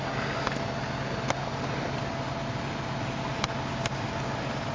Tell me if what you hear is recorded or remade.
recorded